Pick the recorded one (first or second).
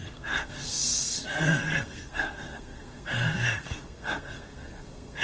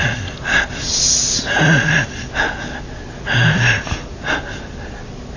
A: second